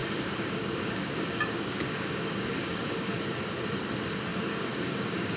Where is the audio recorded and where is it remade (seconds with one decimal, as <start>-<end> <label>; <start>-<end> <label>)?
0.0-3.2 remade; 3.2-4.3 recorded; 4.3-5.4 remade